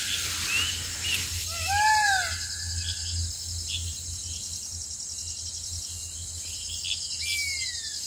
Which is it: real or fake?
real